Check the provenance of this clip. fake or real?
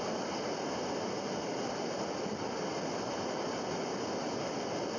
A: real